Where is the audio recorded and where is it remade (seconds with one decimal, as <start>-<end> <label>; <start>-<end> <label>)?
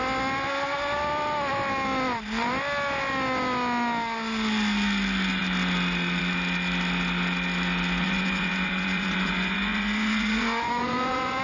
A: 0.0-8.0 recorded; 8.0-11.4 remade